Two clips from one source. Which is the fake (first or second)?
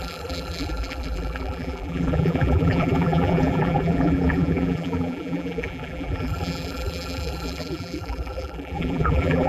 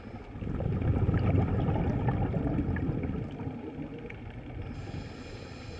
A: first